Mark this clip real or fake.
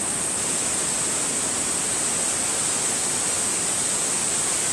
real